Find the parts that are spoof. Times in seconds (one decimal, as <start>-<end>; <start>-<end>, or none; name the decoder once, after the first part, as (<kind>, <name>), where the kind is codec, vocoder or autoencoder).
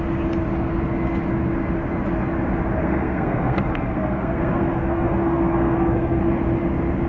2.8-6.2 (codec, SNAC)